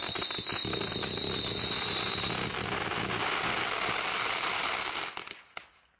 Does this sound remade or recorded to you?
recorded